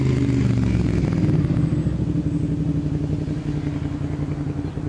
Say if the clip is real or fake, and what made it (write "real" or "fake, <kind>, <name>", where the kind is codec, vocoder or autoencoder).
real